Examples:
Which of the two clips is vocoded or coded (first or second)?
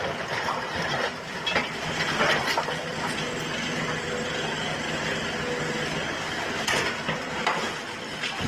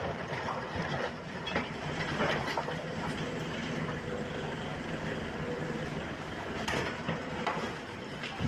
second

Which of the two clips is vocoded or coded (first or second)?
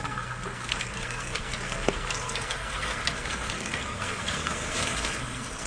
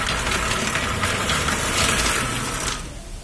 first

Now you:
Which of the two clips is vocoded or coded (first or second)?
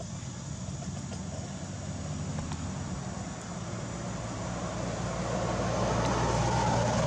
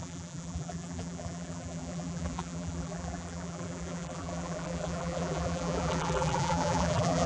second